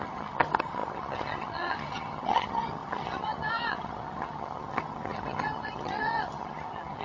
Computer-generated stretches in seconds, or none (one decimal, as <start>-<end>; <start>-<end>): 0.0-7.0